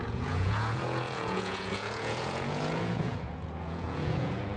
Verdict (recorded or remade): remade